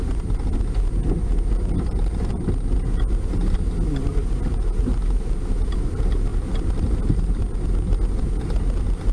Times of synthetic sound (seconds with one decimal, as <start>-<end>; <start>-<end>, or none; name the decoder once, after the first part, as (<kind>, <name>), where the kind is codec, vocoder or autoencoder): none